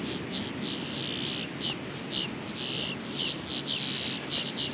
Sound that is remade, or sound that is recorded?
recorded